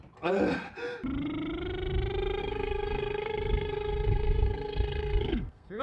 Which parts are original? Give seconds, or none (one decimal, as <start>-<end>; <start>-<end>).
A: 0.0-2.4